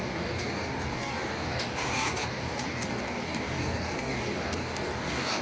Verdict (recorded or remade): remade